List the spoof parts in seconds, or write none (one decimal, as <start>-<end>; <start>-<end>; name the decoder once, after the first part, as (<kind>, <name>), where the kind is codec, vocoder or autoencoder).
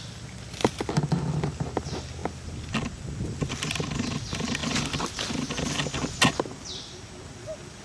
none